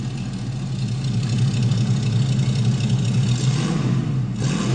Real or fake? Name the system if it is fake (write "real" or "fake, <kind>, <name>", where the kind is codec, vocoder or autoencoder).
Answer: real